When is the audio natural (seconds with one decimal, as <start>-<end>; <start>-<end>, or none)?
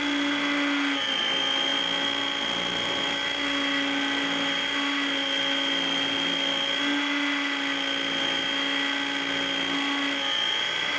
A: 0.0-11.0